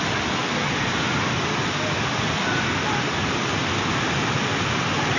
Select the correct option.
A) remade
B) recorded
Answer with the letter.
B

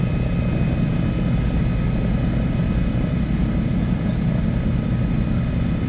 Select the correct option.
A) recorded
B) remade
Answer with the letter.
A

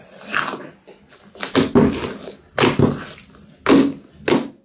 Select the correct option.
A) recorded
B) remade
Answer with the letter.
A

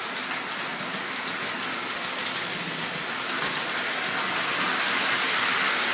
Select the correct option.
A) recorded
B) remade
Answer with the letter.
A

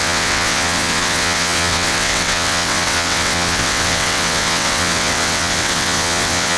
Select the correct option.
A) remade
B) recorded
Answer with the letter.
A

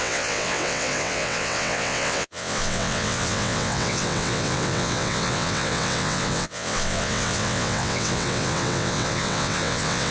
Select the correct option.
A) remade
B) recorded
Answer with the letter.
A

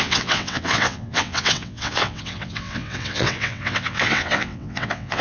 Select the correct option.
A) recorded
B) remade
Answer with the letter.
B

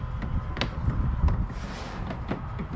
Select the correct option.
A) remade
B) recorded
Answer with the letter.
B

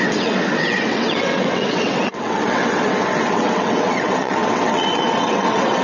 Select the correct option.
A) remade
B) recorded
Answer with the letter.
A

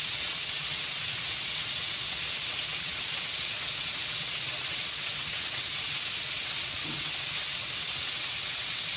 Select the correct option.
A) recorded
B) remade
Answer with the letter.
B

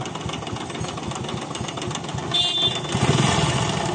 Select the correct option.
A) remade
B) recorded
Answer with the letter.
B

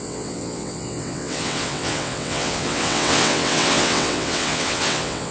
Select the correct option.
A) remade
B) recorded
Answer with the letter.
A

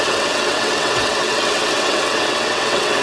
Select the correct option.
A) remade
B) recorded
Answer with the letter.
A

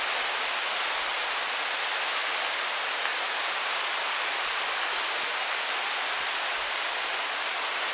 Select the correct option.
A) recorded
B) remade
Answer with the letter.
A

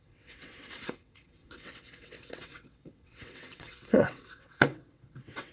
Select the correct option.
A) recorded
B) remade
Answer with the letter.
B